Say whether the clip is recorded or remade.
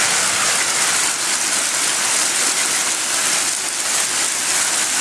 recorded